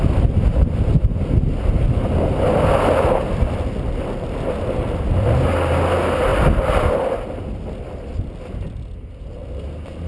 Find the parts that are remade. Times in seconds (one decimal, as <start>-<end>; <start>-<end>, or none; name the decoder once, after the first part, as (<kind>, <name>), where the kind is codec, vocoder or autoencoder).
none